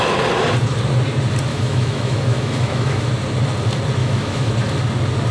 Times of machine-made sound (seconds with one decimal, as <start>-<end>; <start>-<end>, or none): 1.5-3.1; 4.0-4.5